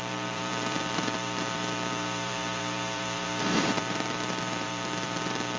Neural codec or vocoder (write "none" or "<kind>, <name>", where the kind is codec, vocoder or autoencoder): vocoder, BigVGAN v2